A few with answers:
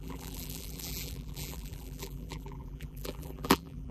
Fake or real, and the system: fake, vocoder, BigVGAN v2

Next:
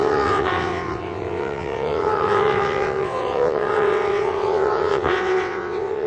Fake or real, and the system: fake, vocoder, WaveNeXt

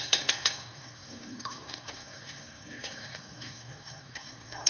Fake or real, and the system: fake, codec, SNAC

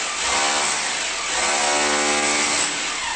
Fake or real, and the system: real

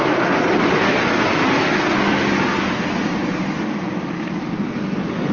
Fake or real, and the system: real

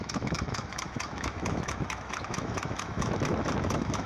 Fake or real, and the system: fake, autoencoder, DAC-VAE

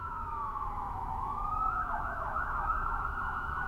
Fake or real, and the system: fake, autoencoder, DAC-VAE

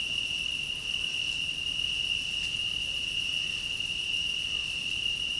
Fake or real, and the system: real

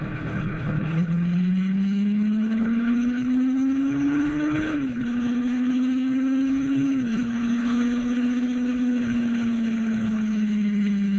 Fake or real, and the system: fake, codec, HILCodec